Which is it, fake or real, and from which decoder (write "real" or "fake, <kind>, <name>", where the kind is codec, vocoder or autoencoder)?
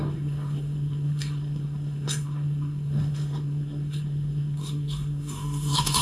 fake, codec, SNAC